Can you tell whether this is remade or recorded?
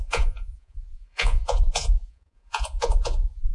remade